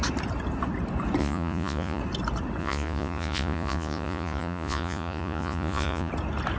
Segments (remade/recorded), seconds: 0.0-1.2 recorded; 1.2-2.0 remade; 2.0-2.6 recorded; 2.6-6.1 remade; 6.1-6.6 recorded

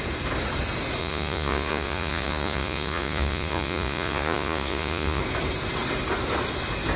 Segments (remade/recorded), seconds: 0.0-1.0 recorded; 1.0-5.2 remade; 5.2-7.0 recorded

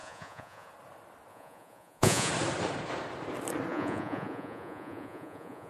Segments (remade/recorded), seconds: 0.0-0.7 remade; 0.7-1.3 recorded; 1.3-2.3 remade; 2.3-3.7 recorded; 3.7-5.7 remade

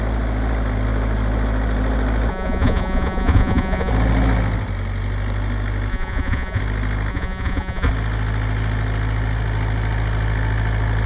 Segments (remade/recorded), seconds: 0.0-2.3 recorded; 2.3-3.9 remade; 3.9-5.9 recorded; 5.9-6.6 remade; 6.6-7.1 recorded; 7.1-7.9 remade; 7.9-11.1 recorded

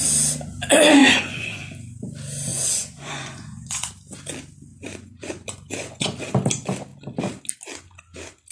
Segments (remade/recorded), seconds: 0.0-1.0 recorded; 1.0-1.6 remade; 1.6-2.5 recorded; 2.5-3.9 remade; 3.9-4.7 recorded; 4.7-6.3 remade; 6.3-8.5 recorded

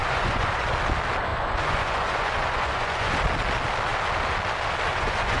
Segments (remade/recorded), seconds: 0.0-0.7 remade; 0.7-1.3 recorded; 1.3-3.1 remade; 3.1-4.9 recorded; 4.9-5.4 remade

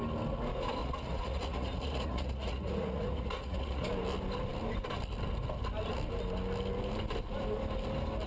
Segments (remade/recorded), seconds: 0.0-0.8 recorded; 0.8-3.8 remade; 3.8-8.3 recorded